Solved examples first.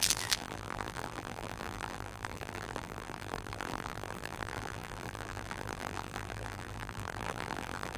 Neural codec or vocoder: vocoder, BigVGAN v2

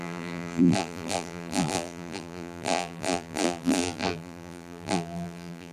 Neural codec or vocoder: vocoder, BigVGAN v2